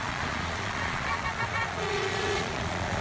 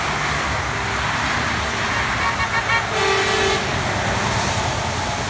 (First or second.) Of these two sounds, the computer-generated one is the first